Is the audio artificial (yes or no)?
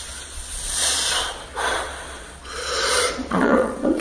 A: yes